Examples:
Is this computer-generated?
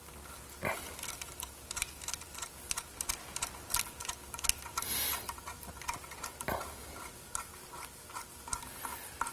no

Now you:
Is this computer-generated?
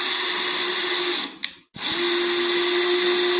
no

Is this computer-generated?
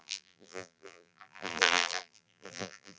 yes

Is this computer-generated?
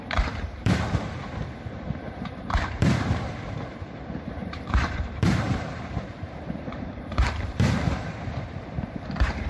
yes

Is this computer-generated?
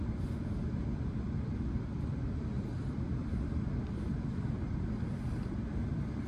no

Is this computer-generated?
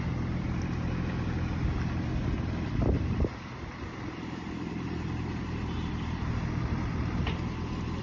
yes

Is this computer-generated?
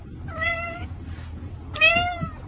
no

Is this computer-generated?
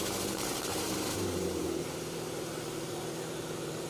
yes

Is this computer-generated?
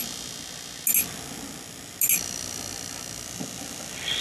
no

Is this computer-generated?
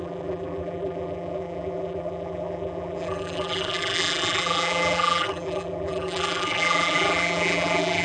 yes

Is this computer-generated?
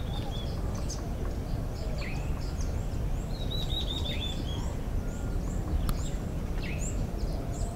yes